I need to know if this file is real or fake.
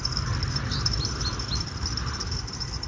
real